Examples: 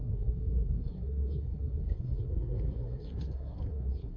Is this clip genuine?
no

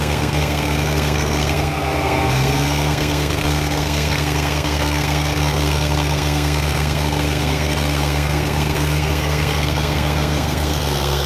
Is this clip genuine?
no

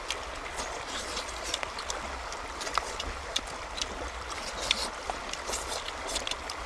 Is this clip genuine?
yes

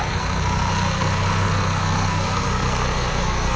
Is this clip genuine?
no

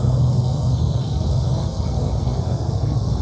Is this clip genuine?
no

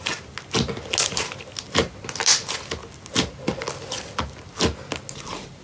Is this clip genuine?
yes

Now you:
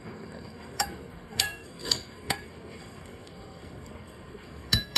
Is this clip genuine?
no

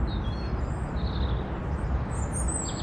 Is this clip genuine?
yes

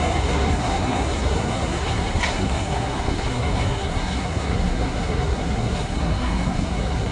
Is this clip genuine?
no